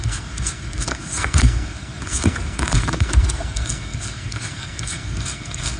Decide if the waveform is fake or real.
fake